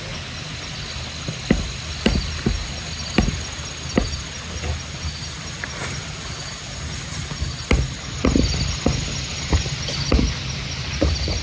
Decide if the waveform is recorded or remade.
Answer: recorded